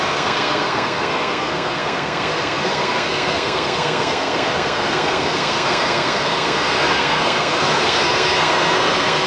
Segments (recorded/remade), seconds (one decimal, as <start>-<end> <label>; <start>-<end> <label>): 0.0-9.3 remade